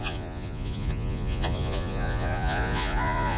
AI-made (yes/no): yes